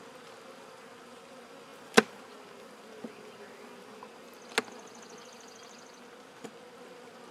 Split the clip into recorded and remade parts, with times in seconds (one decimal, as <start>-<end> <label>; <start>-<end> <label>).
0.0-7.3 recorded